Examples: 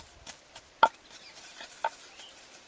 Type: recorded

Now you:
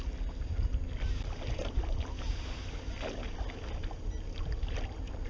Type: recorded